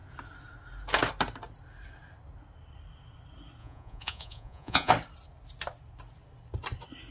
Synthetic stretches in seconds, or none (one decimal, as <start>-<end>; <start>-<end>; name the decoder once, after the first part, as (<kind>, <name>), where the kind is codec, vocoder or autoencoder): 3.6-4.9 (vocoder, Vocos)